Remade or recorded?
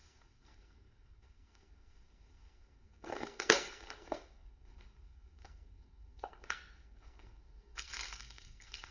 remade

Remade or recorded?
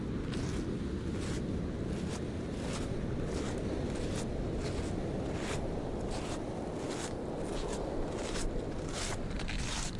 recorded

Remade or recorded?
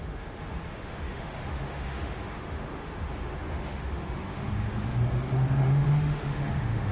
remade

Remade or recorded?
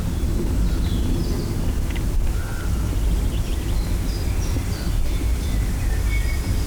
recorded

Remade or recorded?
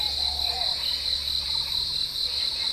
recorded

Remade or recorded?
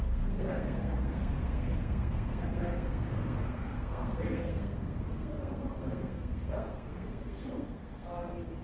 remade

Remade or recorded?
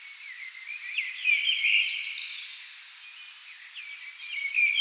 recorded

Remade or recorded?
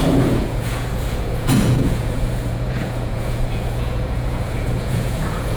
remade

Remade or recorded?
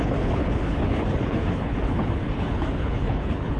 remade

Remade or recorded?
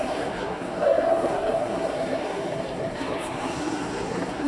remade